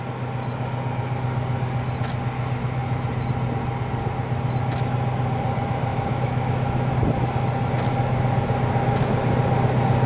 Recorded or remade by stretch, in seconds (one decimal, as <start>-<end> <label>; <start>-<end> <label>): 0.0-5.9 recorded; 5.9-6.9 remade; 6.9-10.1 recorded